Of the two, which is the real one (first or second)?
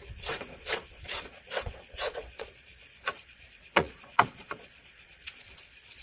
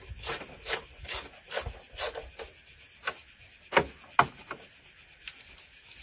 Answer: second